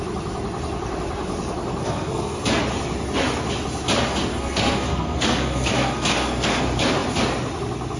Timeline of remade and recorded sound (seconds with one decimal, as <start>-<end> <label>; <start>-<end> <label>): 0.0-1.8 recorded; 1.8-2.4 remade; 2.4-4.3 recorded; 4.3-6.6 remade; 6.6-8.0 recorded